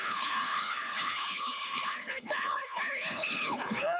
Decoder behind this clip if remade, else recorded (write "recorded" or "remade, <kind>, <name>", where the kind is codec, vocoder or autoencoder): remade, codec, HILCodec